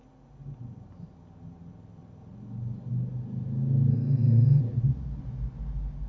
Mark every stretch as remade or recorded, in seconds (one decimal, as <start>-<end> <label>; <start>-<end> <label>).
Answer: 0.0-3.9 recorded; 3.9-4.6 remade; 4.6-6.1 recorded